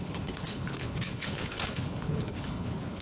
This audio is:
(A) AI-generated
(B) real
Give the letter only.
A